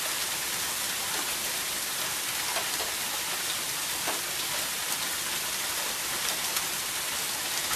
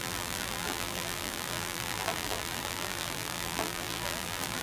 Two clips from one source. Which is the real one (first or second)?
first